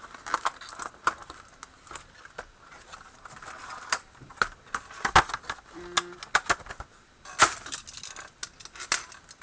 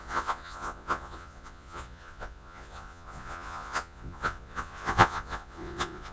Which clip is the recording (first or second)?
first